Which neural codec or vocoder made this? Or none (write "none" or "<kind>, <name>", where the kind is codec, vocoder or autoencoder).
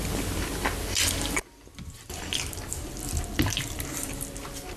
none